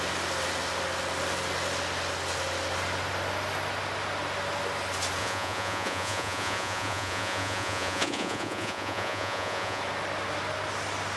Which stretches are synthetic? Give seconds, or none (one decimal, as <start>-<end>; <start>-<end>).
5.2-9.8